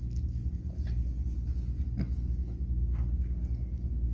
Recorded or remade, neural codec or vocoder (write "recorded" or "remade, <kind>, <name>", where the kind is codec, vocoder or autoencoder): recorded